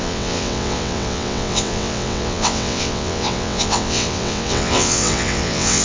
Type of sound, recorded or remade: remade